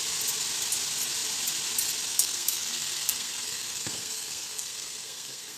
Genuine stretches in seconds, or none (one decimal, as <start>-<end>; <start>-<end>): 0.0-2.1